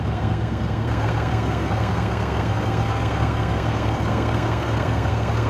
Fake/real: fake